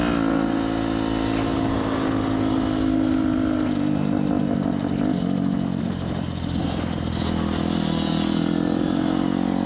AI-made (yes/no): no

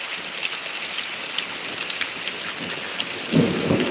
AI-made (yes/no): no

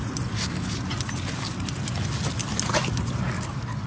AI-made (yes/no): no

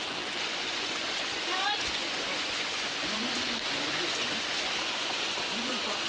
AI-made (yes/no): yes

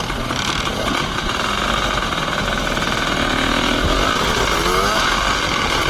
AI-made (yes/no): no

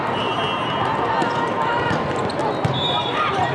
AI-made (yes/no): no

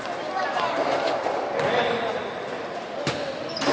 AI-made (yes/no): no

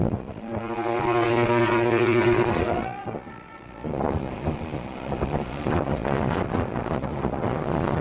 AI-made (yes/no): yes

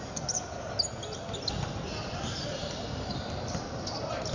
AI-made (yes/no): no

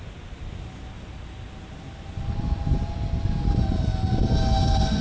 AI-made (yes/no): no